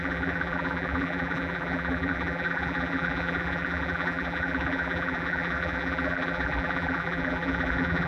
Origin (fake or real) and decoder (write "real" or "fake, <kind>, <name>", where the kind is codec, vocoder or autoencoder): fake, vocoder, BigVGAN v2